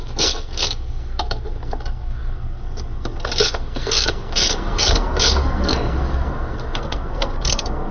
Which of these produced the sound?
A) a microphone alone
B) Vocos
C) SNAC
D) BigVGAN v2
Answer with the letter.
C